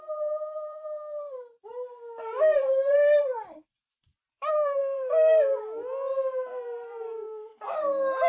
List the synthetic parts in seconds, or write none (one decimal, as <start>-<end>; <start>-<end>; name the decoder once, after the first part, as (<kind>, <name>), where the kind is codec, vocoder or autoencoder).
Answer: 0.0-7.5 (vocoder, BigVGAN v2)